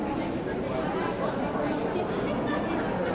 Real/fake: real